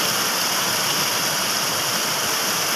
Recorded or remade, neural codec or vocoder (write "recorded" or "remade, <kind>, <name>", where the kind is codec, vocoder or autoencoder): recorded